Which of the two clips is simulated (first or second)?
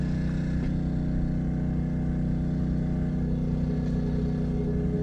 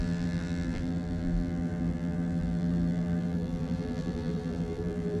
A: second